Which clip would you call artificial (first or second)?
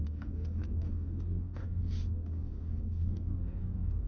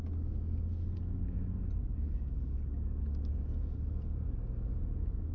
first